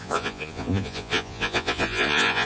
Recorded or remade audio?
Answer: remade